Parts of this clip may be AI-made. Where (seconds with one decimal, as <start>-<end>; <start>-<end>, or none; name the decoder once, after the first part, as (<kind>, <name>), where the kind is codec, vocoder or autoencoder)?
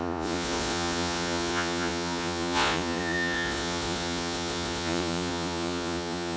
0.0-6.4 (vocoder, Vocos)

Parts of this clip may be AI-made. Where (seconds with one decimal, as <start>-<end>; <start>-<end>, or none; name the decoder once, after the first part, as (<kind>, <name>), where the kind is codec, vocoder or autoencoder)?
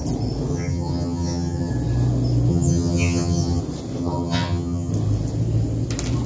0.5-1.7 (vocoder, HiFi-GAN); 2.5-3.6; 4.0-4.9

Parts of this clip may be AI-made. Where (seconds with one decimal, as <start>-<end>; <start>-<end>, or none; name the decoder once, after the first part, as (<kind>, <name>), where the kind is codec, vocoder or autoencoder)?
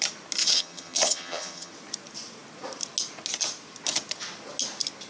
0.4-1.7 (vocoder, HiFi-GAN)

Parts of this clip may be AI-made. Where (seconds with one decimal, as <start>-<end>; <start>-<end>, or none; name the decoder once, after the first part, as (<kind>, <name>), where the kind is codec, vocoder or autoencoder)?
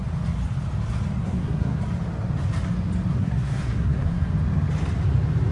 1.2-1.8 (codec, SNAC); 3.1-4.3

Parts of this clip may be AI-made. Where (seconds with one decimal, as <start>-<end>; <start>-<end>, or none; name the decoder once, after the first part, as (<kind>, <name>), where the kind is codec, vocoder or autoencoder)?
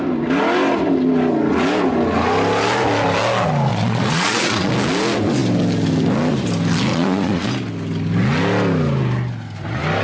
3.7-4.7 (vocoder, Vocos); 6.9-7.5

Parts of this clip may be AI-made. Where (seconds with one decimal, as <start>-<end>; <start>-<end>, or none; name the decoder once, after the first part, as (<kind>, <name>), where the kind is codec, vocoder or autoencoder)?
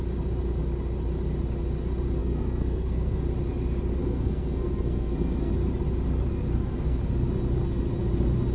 2.2-3.2 (codec, SNAC); 4.0-5.5; 6.3-7.0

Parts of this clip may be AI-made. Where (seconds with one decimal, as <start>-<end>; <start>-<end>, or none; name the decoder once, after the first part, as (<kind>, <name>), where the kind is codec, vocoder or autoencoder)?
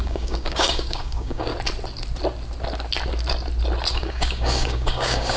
0.0-1.5 (codec, DAC); 3.9-5.4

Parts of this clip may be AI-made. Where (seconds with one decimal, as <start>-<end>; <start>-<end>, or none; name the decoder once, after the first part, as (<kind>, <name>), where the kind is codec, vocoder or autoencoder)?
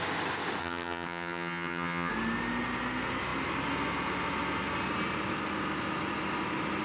0.6-2.1 (vocoder, HiFi-GAN)